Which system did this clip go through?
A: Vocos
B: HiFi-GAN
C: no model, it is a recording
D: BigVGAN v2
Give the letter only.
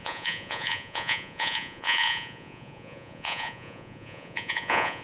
A